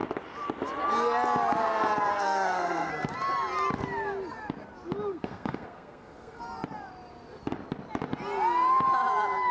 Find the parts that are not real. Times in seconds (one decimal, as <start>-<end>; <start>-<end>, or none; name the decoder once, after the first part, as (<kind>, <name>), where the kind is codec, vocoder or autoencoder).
2.1-2.9 (codec, SNAC); 5.1-6.4